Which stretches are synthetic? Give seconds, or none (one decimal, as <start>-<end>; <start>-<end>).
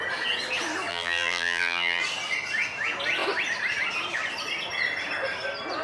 0.9-2.0